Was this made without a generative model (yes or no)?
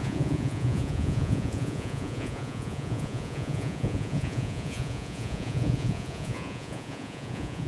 no